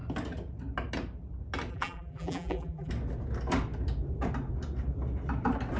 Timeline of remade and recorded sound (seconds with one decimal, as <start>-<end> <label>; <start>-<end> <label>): 0.0-1.7 recorded; 1.7-2.9 remade; 2.9-5.8 recorded